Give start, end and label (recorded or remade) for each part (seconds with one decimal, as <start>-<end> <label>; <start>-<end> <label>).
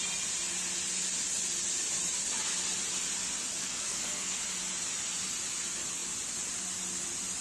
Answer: 0.0-3.6 recorded; 3.6-4.4 remade; 4.4-7.4 recorded